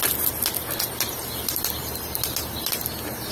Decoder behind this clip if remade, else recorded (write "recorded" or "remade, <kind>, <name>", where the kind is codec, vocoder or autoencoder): recorded